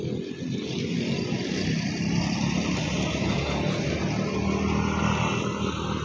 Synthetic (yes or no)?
no